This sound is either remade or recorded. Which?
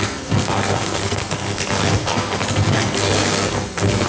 remade